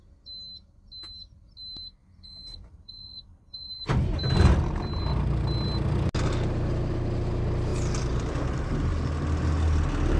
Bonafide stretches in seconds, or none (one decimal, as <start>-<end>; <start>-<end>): 0.0-2.0; 4.4-7.7; 8.9-10.2